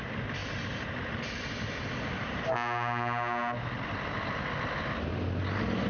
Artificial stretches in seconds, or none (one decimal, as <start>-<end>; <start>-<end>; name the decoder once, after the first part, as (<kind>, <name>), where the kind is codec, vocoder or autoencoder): none